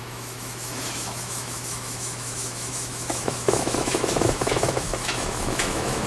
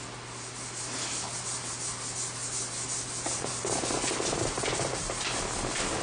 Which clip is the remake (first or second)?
first